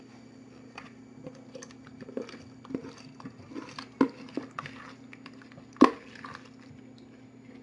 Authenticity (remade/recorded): recorded